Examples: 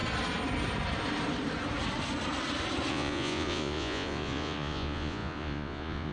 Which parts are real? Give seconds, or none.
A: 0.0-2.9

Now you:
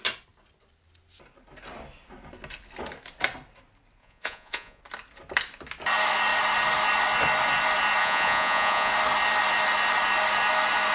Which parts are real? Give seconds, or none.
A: 0.0-4.0; 4.8-8.0; 8.9-10.9

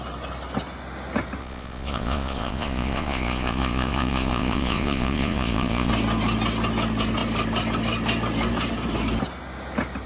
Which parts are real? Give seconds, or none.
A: 0.0-1.4; 5.9-10.1

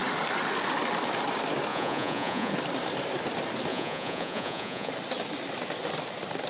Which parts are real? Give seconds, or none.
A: 0.0-1.7; 2.5-3.7; 4.9-6.5